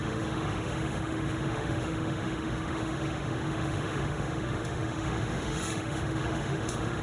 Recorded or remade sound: remade